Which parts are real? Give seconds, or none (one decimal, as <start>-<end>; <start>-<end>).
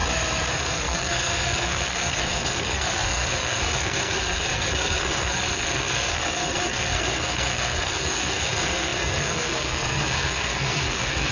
0.0-0.5